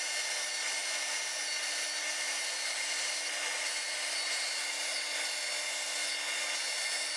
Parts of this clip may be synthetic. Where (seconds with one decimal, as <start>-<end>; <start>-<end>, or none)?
none